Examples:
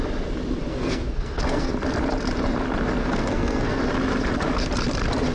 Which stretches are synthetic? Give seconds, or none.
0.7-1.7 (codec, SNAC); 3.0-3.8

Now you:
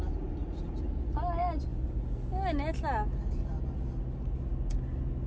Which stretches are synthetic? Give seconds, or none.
none